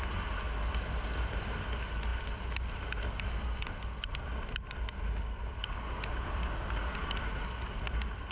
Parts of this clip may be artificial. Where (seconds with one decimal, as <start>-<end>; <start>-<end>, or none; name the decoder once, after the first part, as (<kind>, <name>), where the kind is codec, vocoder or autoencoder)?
none